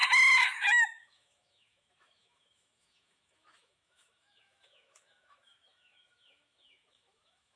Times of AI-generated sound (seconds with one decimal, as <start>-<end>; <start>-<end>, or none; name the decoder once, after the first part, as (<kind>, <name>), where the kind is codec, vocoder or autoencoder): 0.0-7.6 (autoencoder, DAC-VAE)